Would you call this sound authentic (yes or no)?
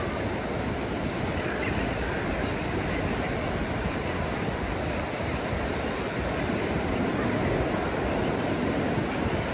yes